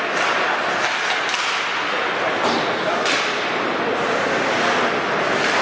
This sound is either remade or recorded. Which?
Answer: recorded